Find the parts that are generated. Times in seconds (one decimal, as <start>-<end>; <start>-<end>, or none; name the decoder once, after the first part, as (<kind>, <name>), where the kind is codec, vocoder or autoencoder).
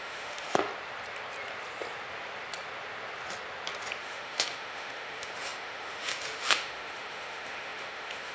0.0-0.7 (autoencoder, DAC-VAE); 4.0-8.3